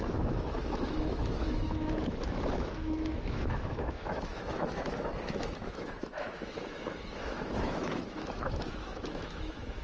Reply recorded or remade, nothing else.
remade